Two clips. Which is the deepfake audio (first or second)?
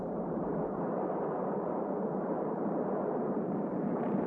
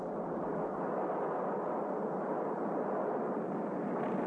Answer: first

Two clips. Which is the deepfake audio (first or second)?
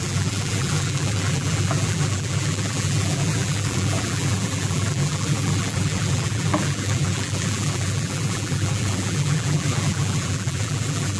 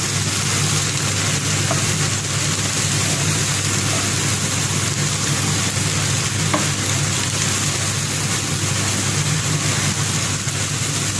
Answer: first